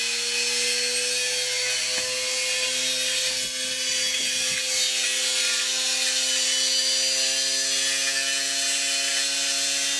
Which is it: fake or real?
real